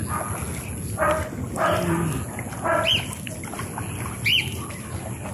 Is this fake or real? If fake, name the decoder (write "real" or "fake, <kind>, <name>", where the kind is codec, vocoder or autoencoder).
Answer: real